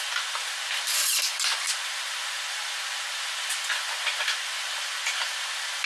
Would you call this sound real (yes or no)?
yes